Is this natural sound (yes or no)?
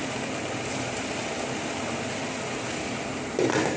yes